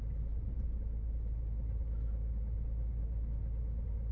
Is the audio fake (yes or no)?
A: no